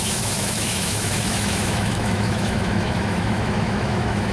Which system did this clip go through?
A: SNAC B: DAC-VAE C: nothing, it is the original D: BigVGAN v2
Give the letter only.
B